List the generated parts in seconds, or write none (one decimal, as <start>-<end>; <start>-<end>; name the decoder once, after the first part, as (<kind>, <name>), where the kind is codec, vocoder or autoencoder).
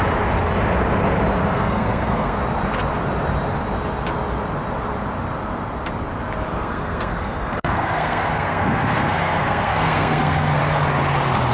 1.5-2.4 (codec, SNAC); 6.5-10.6